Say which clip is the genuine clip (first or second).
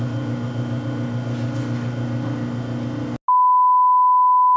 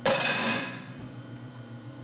first